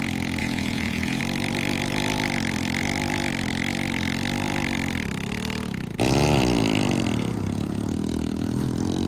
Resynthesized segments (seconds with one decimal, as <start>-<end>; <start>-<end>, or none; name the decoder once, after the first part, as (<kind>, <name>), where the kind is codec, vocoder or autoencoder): 0.4-1.2 (vocoder, Vocos)